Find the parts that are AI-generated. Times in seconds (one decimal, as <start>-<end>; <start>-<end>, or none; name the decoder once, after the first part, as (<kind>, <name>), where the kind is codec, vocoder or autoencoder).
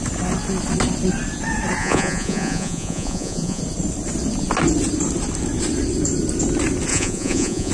1.8-3.6 (vocoder, Vocos); 6.9-7.7